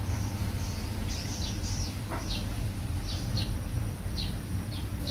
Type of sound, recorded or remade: remade